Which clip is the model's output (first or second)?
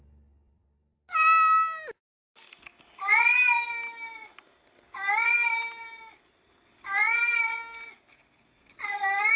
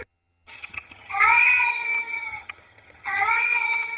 second